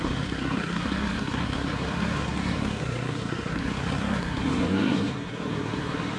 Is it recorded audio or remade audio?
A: remade